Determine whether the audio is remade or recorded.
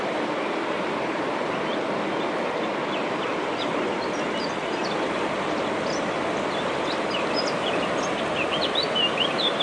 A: recorded